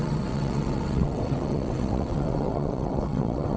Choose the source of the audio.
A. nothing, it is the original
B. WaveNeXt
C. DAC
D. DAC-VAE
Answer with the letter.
B